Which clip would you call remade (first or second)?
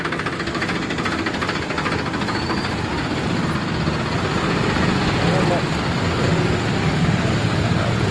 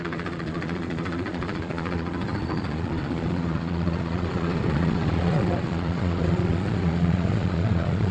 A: second